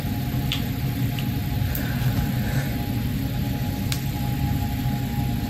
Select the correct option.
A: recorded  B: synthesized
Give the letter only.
A